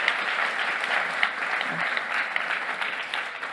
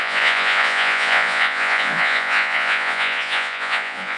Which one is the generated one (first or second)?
second